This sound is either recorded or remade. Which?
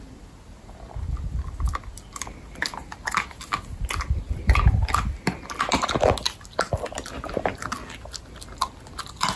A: recorded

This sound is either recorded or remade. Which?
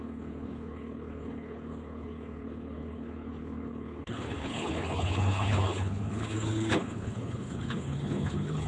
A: remade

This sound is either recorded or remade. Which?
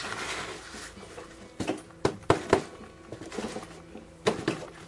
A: recorded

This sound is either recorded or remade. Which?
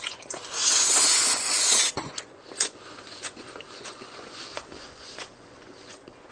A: remade